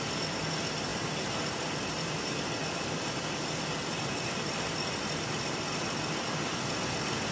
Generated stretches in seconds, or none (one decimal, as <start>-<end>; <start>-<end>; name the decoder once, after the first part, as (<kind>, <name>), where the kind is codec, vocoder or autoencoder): 0.9-1.6 (vocoder, BigVGAN v2)